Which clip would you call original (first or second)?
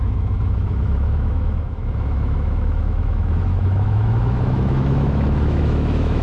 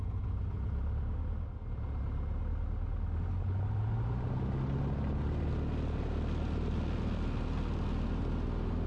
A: second